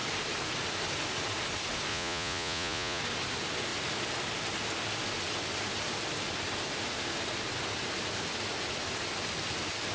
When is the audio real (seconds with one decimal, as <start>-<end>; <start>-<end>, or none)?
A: 0.0-1.9; 3.0-9.9